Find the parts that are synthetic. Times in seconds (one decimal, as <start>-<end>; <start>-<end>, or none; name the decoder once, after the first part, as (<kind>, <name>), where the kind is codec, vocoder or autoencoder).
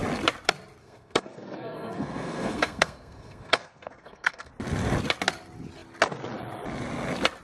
0.8-4.5 (codec, SNAC)